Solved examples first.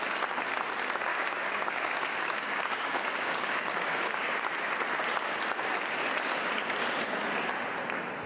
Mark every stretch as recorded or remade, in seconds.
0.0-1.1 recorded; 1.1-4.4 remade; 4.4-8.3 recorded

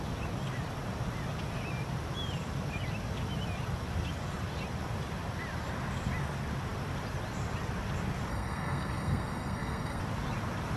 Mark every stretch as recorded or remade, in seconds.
0.0-8.3 recorded; 8.3-10.0 remade; 10.0-10.8 recorded

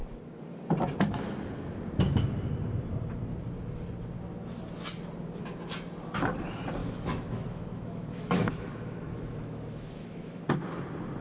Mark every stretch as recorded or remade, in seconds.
0.0-6.8 recorded; 6.8-10.4 remade; 10.4-11.2 recorded